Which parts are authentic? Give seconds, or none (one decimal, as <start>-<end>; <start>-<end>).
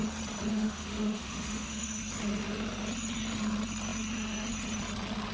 0.0-0.5; 2.0-5.3